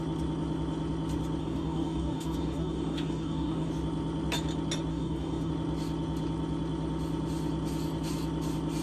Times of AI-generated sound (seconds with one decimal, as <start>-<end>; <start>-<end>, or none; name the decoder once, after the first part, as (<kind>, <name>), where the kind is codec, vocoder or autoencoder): 1.4-3.7 (codec, DAC); 4.9-5.5